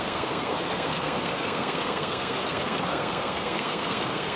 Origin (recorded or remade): remade